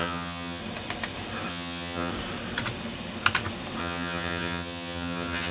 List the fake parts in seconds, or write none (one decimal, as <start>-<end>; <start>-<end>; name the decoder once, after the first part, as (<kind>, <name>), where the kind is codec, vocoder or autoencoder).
0.0-0.6 (vocoder, HiFi-GAN); 1.5-2.1; 3.8-5.5